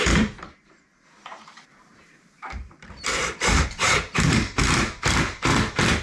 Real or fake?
fake